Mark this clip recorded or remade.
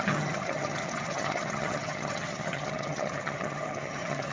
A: remade